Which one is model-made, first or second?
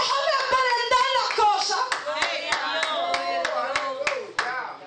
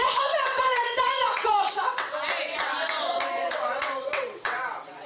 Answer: second